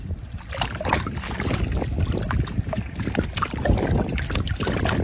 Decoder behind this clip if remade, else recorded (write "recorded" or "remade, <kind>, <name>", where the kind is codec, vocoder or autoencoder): recorded